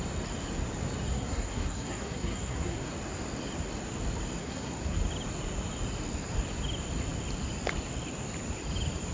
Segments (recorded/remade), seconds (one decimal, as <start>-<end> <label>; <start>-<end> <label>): 0.0-1.1 recorded; 1.1-2.9 remade; 2.9-4.4 recorded; 4.4-5.0 remade; 5.0-9.1 recorded